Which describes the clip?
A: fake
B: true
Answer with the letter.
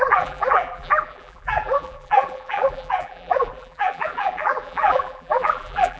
A